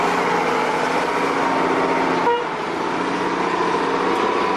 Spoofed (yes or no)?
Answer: no